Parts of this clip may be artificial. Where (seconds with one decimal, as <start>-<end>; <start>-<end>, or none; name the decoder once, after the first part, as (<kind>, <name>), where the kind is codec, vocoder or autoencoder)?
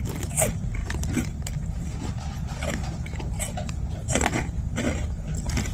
0.8-2.1 (vocoder, BigVGAN v2); 4.0-4.8